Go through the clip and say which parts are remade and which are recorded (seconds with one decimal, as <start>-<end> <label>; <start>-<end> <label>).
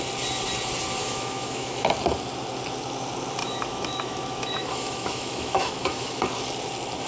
0.0-1.0 recorded; 1.0-1.9 remade; 1.9-3.4 recorded; 3.4-6.2 remade; 6.2-7.1 recorded